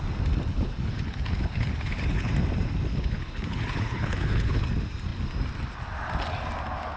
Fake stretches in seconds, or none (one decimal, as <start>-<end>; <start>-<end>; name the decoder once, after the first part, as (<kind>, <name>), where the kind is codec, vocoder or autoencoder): 0.5-2.3 (codec, HILCodec); 2.9-4.6